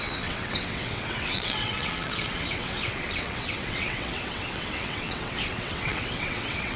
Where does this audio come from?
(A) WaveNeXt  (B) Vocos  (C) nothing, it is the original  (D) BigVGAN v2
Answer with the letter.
A